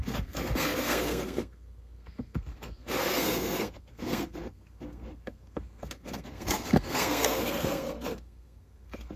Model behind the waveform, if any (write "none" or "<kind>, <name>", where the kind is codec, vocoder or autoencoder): codec, SNAC